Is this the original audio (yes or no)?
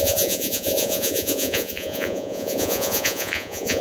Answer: no